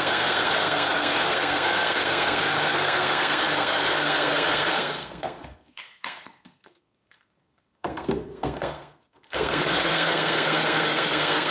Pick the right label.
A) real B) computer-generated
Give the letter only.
B